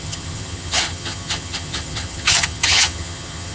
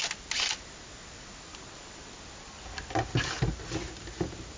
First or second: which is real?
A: second